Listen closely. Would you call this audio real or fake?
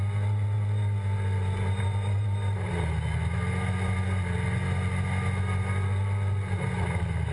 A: real